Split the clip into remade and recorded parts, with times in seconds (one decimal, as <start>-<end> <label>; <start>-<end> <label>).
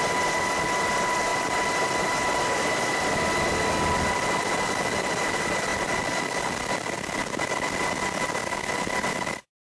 0.0-9.7 recorded